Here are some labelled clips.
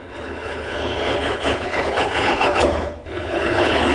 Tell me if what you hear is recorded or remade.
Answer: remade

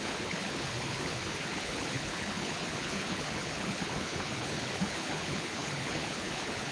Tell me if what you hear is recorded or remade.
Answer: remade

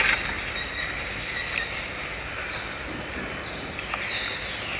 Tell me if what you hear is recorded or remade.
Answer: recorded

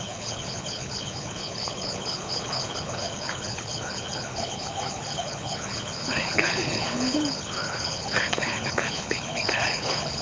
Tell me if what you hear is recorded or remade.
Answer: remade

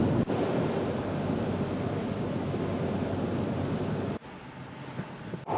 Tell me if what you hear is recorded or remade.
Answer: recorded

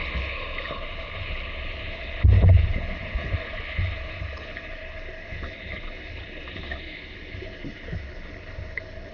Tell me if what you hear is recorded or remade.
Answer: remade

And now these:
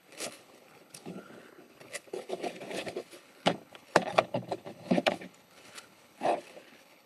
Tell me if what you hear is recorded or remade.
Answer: remade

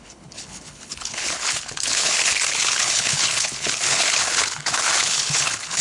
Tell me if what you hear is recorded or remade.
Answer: remade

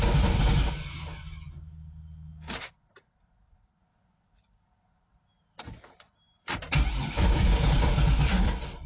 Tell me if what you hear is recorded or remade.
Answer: recorded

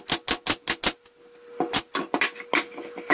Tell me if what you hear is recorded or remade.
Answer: recorded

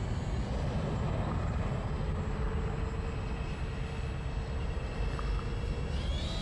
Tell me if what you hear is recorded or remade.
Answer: recorded